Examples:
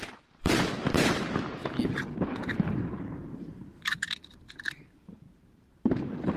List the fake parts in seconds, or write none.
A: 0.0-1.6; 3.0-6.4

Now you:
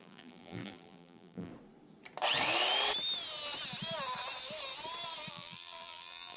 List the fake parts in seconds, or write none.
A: 0.0-1.5; 5.3-6.4